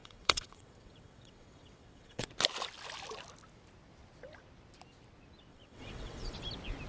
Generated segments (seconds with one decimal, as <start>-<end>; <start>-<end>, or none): 0.0-2.3; 5.5-6.3